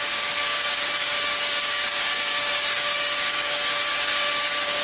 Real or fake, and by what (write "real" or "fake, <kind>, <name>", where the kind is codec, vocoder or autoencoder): fake, codec, DAC